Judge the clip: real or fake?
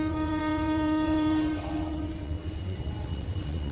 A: fake